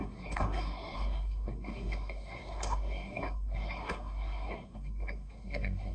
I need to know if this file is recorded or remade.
remade